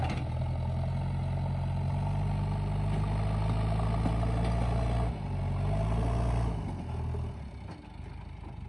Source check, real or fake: real